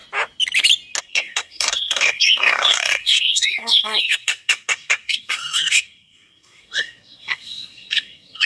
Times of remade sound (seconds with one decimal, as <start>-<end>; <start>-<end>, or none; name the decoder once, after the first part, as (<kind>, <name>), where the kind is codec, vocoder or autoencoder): 1.0-8.5 (codec, SNAC)

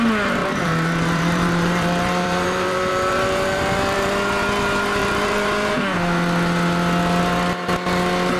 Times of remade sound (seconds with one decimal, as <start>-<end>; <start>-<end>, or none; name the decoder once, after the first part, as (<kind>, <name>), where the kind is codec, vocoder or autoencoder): 0.4-4.1 (vocoder, BigVGAN v2); 5.0-5.7

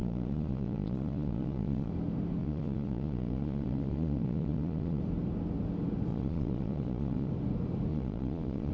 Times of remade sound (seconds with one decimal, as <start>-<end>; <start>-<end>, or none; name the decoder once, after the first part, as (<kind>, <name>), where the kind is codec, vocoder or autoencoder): 0.0-1.9 (vocoder, Vocos); 2.4-5.0; 6.1-7.3; 7.9-8.7

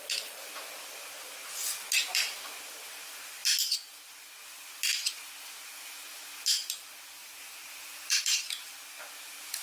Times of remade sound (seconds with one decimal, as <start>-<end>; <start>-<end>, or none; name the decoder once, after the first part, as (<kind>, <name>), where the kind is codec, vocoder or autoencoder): 7.2-8.2 (vocoder, BigVGAN v2)

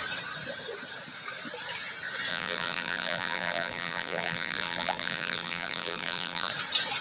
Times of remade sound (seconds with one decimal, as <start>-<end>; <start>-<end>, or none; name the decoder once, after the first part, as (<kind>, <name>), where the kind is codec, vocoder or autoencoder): 2.3-6.5 (vocoder, BigVGAN v2)

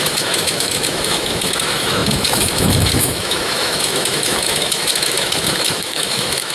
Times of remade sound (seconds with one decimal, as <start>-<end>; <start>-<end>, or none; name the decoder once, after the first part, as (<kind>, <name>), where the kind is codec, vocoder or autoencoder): 0.0-6.5 (autoencoder, DAC-VAE)

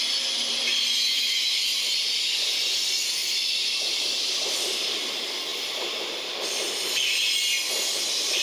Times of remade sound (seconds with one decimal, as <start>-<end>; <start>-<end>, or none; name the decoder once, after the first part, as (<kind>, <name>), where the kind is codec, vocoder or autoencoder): 3.2-5.0 (vocoder, BigVGAN v2); 5.5-6.7

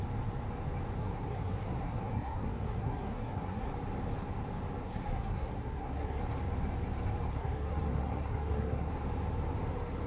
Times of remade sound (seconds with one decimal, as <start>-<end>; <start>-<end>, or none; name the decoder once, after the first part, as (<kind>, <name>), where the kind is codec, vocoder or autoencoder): 1.0-3.7 (codec, SNAC); 4.8-6.2; 7.3-8.9